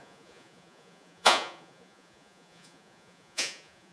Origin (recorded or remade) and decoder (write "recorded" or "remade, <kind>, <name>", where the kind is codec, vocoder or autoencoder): remade, vocoder, Vocos